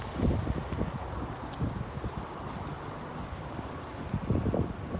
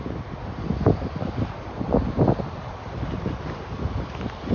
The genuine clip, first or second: first